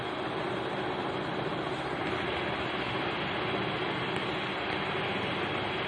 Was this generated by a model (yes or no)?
no